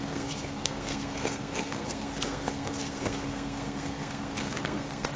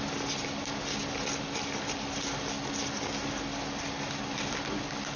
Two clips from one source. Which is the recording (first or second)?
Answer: second